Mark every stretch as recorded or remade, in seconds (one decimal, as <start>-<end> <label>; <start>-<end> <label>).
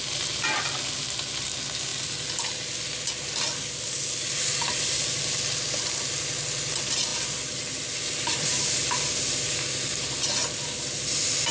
0.0-11.5 recorded